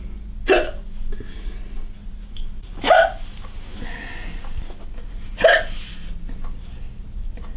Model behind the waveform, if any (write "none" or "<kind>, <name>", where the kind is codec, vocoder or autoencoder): none